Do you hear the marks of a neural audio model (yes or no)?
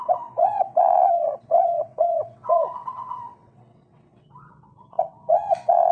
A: yes